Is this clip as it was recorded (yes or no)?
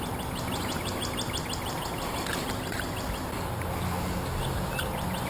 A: yes